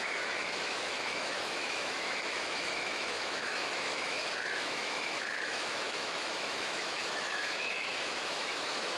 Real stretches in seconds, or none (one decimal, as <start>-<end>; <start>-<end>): none